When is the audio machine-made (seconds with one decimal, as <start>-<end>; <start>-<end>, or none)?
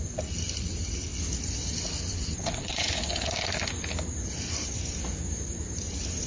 2.1-2.9